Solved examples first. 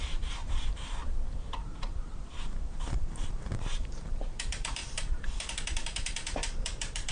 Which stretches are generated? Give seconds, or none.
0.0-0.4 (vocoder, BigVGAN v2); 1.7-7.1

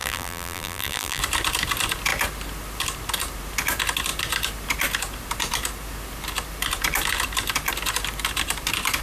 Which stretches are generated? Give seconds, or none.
0.0-1.2 (vocoder, BigVGAN v2)

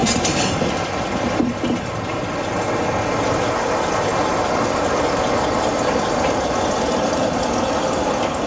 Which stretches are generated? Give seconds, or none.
0.0-0.6 (vocoder, BigVGAN v2); 4.1-7.7

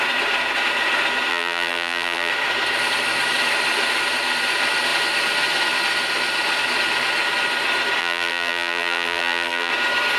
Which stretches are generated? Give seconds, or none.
1.3-2.3 (vocoder, BigVGAN v2); 8.0-9.7

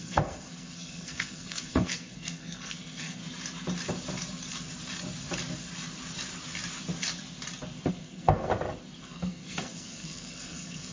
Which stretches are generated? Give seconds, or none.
0.0-3.2 (codec, SNAC); 7.9-8.5; 9.0-10.9

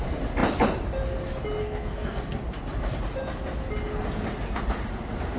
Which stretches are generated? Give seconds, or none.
1.6-2.4 (codec, SNAC)

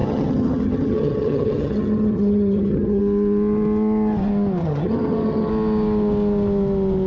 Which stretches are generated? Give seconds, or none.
0.0-3.0 (vocoder, HiFi-GAN); 4.6-5.5

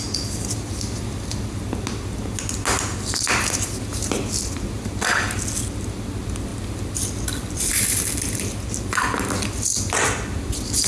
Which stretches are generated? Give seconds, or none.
none